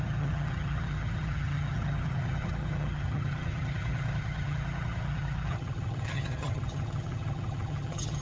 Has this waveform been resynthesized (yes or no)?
yes